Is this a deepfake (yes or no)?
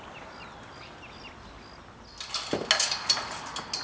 no